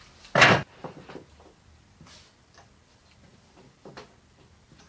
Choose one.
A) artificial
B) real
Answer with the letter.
B